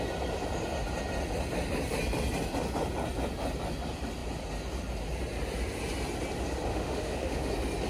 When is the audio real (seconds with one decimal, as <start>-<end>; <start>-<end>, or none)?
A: 0.0-6.7; 7.5-7.9